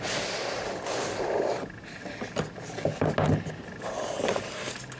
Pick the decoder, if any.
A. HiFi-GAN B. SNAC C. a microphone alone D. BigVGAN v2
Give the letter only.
C